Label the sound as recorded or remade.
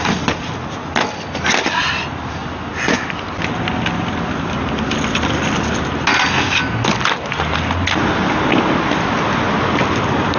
recorded